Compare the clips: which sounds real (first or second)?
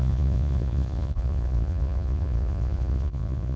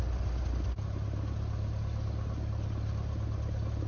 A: second